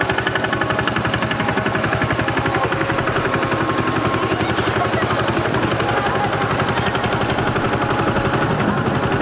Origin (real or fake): real